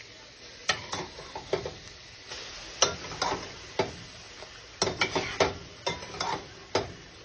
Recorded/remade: recorded